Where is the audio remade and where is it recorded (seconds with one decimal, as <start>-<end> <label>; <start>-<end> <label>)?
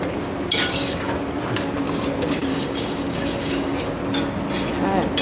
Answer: 0.0-0.6 recorded; 0.6-1.1 remade; 1.1-2.5 recorded; 2.5-3.8 remade; 3.8-5.2 recorded